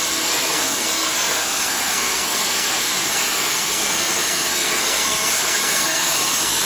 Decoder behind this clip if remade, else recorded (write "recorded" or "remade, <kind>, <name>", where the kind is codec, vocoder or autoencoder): remade, codec, SNAC